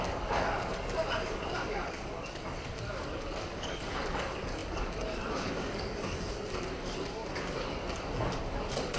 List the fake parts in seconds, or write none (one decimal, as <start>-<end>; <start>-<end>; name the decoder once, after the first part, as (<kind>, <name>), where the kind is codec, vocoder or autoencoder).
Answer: 0.0-9.0 (codec, DAC)